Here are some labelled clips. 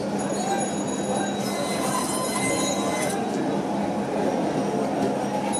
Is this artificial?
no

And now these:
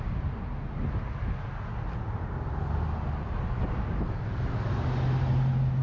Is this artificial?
no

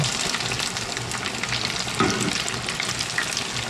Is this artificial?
no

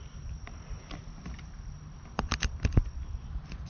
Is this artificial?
yes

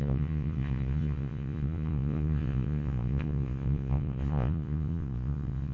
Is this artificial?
yes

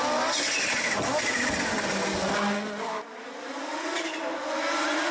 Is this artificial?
no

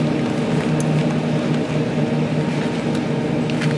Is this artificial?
no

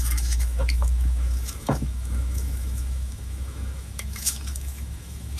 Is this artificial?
yes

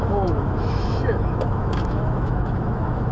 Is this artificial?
yes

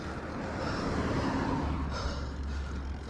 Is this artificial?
no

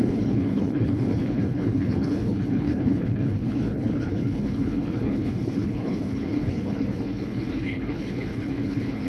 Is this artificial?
yes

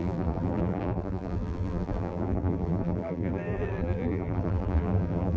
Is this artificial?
yes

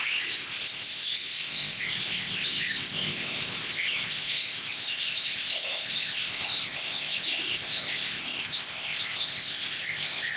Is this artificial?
yes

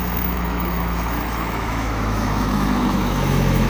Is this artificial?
yes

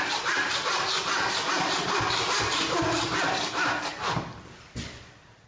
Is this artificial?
no